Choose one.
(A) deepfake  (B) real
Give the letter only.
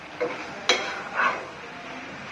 B